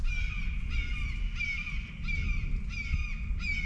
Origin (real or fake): real